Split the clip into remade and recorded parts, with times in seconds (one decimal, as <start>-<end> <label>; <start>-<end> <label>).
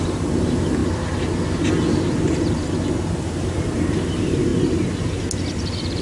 0.0-0.8 remade; 0.8-3.1 recorded; 3.1-4.5 remade; 4.5-6.0 recorded